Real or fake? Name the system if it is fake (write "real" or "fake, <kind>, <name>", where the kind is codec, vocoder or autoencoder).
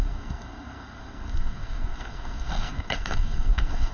fake, codec, SNAC